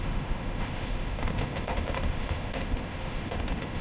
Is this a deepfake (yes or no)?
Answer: yes